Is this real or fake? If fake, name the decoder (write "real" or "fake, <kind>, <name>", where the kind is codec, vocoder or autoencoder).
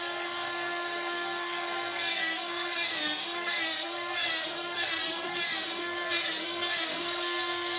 fake, codec, SNAC